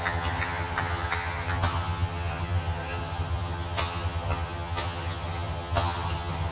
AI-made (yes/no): yes